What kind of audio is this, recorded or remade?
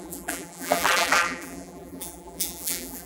remade